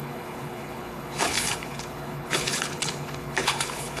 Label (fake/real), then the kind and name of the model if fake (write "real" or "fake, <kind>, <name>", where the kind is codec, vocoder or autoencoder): fake, codec, HILCodec